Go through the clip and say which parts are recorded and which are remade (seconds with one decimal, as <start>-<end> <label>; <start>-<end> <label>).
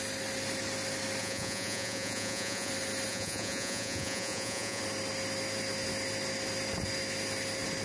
0.0-1.2 recorded; 1.2-2.7 remade; 2.7-3.1 recorded; 3.1-4.8 remade; 4.8-7.8 recorded